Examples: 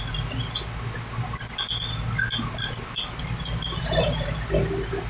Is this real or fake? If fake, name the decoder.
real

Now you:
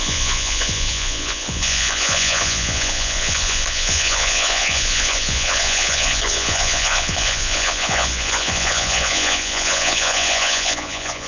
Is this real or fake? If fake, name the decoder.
fake, vocoder, Vocos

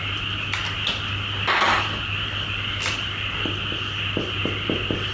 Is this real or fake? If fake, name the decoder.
real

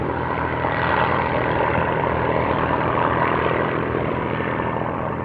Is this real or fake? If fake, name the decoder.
fake, vocoder, BigVGAN v2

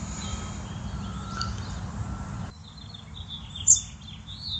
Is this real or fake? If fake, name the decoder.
real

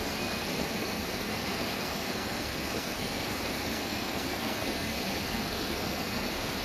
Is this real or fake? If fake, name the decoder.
fake, codec, SNAC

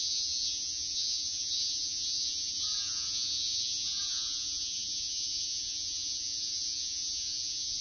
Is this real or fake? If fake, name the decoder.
fake, vocoder, Vocos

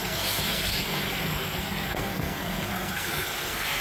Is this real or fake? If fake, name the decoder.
fake, codec, SNAC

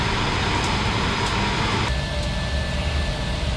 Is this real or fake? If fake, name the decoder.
real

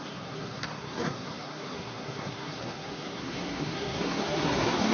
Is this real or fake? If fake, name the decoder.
fake, codec, SNAC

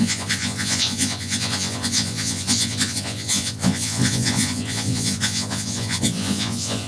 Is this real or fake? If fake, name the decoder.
fake, vocoder, Vocos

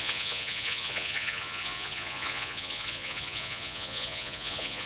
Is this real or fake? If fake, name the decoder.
fake, vocoder, Vocos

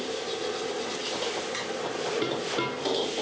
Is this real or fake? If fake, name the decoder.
real